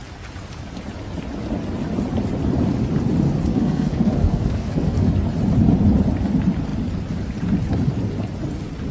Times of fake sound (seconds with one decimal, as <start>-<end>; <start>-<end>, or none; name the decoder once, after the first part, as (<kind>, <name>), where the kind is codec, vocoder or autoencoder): 3.5-5.1 (codec, SNAC)